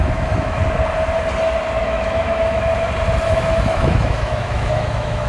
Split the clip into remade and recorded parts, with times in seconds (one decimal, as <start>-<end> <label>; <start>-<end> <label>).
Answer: 0.0-0.6 remade; 0.6-1.8 recorded; 1.8-2.7 remade; 2.7-3.3 recorded; 3.3-5.3 remade